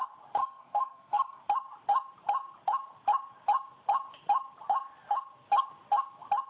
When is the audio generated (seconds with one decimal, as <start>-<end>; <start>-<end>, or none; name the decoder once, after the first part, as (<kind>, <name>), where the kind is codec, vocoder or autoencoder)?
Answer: 0.4-1.4 (codec, SNAC)